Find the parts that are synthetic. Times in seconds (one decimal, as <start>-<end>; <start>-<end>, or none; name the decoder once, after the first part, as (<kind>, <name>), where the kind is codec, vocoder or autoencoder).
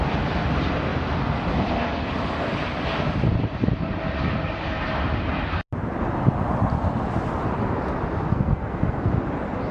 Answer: 8.3-9.1 (codec, SNAC)